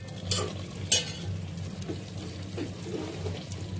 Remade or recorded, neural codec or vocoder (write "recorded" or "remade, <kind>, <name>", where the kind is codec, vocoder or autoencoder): recorded